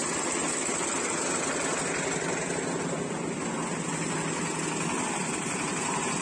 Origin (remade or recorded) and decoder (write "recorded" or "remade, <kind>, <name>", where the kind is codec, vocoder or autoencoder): recorded